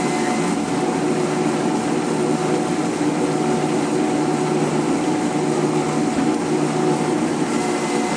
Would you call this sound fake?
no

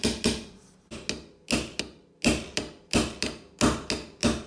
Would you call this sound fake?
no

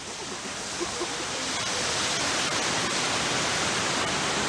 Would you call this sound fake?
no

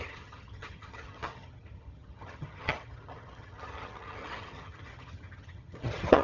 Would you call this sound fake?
yes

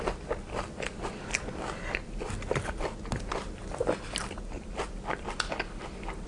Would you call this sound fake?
yes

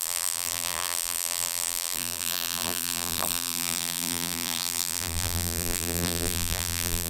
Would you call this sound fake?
yes